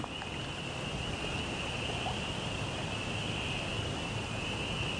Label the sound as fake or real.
real